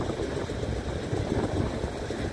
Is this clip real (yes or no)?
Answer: yes